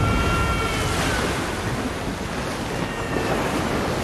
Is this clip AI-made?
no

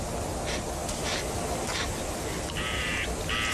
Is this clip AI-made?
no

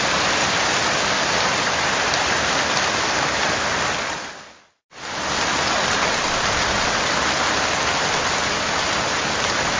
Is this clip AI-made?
no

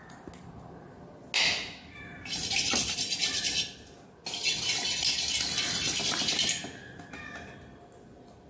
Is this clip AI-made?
no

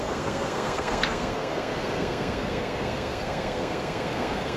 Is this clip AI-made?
yes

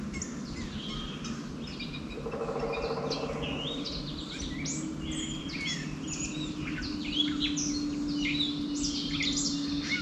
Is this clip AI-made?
no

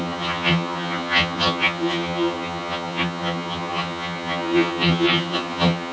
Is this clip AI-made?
yes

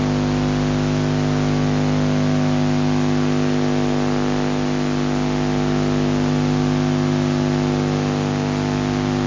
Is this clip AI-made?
no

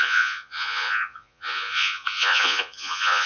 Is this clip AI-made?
yes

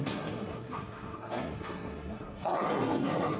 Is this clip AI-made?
yes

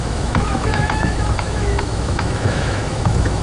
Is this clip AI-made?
yes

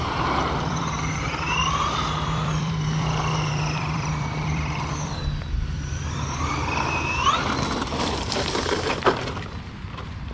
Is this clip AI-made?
yes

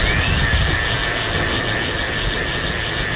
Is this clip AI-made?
no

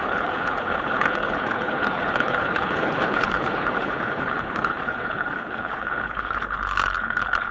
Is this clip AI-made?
yes